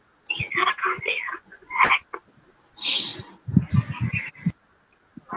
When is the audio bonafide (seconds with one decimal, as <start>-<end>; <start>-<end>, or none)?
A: 0.0-0.6; 1.9-5.4